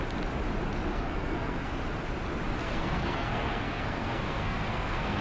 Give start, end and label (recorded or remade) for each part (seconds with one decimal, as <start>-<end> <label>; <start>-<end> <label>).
0.0-0.9 recorded; 0.9-1.8 remade; 1.8-2.6 recorded; 2.6-5.2 remade